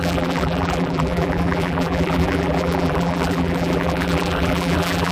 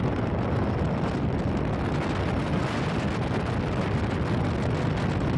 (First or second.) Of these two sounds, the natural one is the second